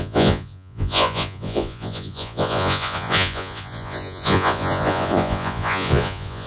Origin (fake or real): fake